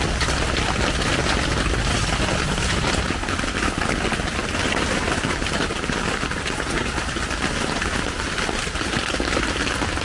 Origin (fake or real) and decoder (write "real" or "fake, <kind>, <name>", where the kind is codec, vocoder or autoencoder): real